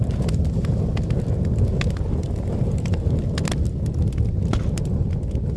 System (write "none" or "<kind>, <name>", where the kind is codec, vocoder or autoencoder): none